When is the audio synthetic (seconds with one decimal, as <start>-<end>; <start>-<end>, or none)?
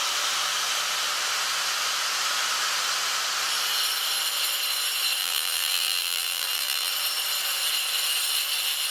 5.2-6.9